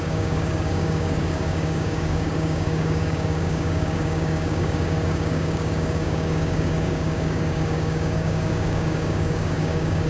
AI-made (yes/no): yes